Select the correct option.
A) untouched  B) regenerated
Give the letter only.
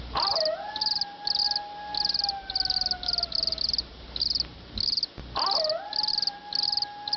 A